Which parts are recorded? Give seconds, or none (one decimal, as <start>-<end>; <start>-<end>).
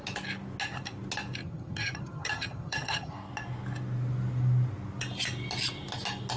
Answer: 0.0-1.4; 3.1-6.4